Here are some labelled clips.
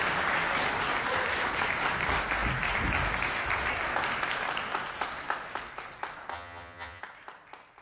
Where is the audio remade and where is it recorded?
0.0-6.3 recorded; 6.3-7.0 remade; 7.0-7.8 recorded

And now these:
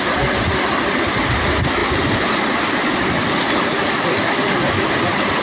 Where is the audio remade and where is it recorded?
0.0-5.4 recorded